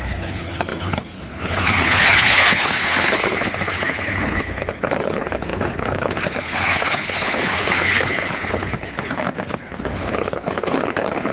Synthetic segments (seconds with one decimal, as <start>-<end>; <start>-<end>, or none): 0.0-11.3